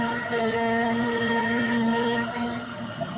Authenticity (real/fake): fake